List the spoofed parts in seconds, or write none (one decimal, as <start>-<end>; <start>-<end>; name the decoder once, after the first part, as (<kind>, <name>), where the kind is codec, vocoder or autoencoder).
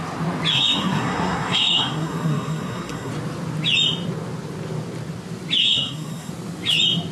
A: 0.5-3.1 (codec, SNAC); 5.6-6.3